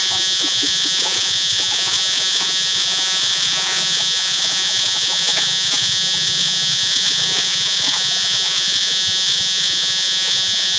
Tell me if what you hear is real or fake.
fake